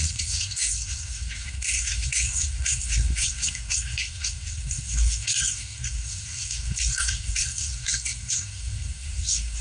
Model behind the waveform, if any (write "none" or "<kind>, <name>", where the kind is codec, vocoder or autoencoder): codec, SNAC